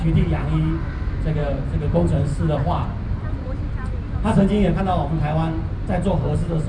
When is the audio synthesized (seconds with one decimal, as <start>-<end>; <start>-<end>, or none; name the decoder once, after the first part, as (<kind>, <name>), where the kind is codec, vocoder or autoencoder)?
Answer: none